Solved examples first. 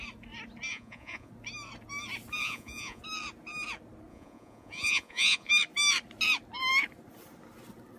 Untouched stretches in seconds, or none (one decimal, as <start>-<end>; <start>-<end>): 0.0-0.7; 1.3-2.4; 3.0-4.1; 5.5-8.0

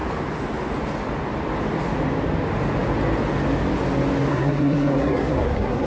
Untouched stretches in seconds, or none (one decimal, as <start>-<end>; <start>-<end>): 0.0-4.3

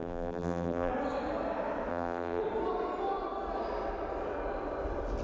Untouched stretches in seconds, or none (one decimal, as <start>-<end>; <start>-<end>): 0.9-1.9; 2.4-5.2

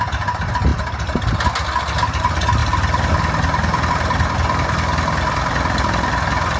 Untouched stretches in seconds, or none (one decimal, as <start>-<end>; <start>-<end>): 0.0-6.6

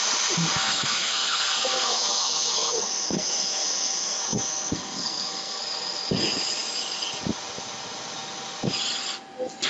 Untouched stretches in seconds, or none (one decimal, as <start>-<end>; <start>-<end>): 0.0-0.5; 5.6-9.7

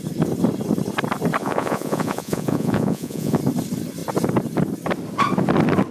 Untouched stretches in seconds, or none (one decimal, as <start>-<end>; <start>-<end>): 0.0-1.4; 3.4-5.9